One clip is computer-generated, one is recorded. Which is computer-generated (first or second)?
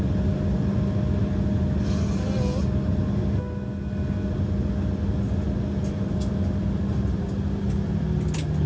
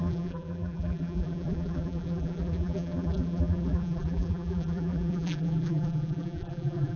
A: second